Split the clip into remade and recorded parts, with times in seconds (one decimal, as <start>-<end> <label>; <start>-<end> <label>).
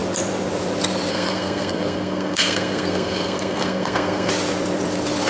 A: 0.0-1.1 recorded; 1.1-4.3 remade; 4.3-5.3 recorded